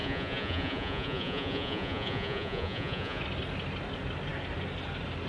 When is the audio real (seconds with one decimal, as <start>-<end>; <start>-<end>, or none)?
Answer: 3.2-5.3